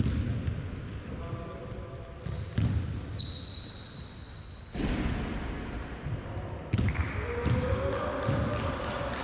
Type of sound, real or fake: real